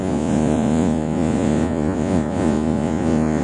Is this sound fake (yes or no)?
yes